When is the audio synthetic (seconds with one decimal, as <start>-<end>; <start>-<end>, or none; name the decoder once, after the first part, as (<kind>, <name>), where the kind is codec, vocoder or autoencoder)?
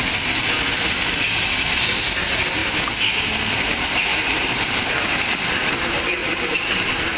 4.1-4.8 (vocoder, BigVGAN v2); 6.2-7.2